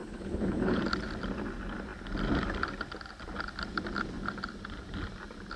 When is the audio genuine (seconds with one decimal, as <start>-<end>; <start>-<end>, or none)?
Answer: 0.8-5.6